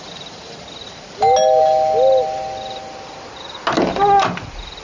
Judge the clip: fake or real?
real